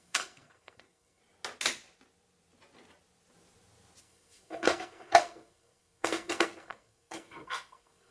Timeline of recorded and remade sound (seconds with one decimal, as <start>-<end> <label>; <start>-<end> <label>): 0.0-1.2 remade; 1.2-4.0 recorded; 4.0-8.1 remade